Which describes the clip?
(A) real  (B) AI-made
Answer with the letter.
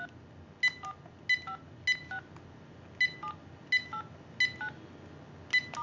A